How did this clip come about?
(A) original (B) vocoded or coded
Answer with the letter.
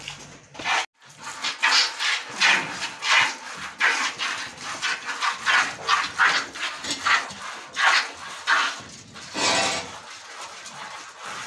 A